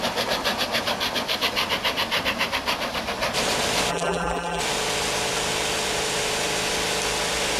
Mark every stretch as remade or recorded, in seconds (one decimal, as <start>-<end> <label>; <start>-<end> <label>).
0.0-3.9 recorded; 3.9-4.6 remade; 4.6-7.6 recorded